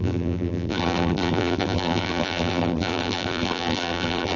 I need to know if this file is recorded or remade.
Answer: remade